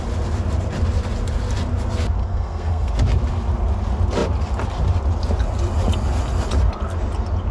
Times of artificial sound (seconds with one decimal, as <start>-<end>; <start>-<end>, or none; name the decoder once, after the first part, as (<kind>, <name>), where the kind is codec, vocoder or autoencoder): 2.2-2.9 (codec, SNAC)